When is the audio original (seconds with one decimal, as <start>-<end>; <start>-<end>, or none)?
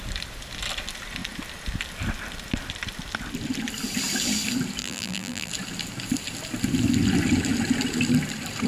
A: 0.0-4.8; 5.5-8.7